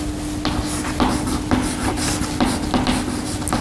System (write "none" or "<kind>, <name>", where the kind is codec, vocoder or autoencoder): none